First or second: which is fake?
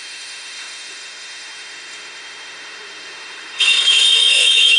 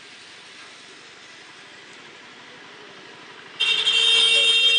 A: first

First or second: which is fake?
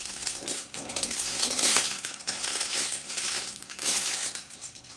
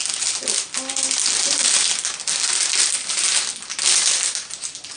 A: first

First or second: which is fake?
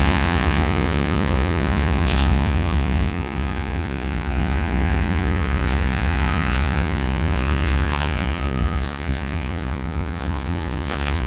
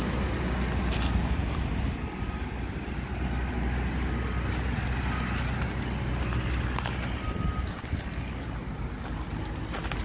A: first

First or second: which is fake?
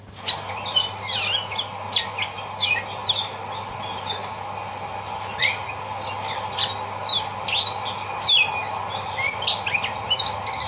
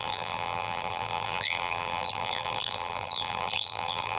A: second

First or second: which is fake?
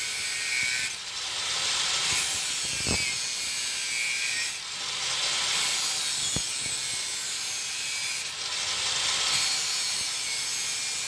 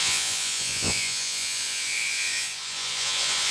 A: second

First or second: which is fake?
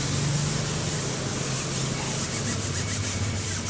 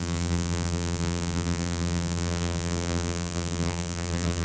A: second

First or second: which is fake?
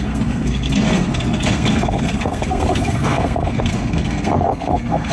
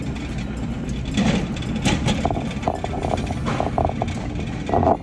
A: first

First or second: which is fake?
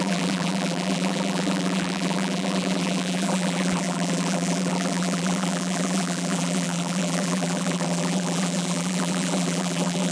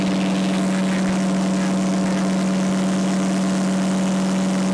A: first